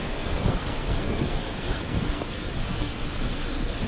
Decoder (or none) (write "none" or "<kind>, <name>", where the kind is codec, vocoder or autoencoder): codec, SNAC